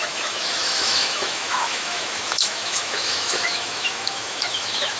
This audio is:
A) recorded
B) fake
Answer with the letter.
B